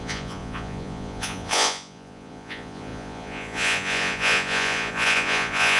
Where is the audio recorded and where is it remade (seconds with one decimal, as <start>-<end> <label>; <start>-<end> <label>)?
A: 0.0-5.8 remade